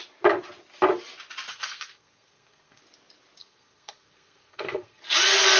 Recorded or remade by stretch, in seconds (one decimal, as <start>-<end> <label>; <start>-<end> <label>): 0.0-1.5 recorded; 1.5-2.8 remade; 2.8-3.4 recorded; 3.4-5.0 remade; 5.0-5.6 recorded